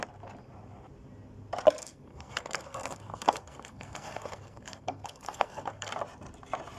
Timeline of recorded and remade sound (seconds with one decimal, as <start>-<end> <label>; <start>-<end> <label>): 0.0-1.8 recorded; 1.8-5.9 remade; 5.9-6.8 recorded